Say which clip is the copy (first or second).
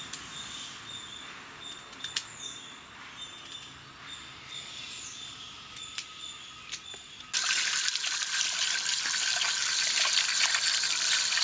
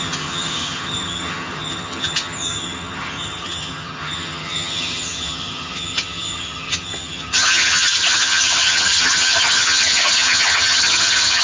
second